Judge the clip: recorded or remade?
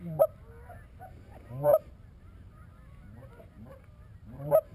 recorded